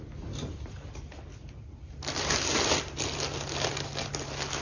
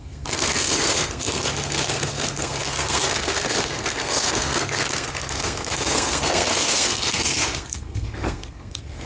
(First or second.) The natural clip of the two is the first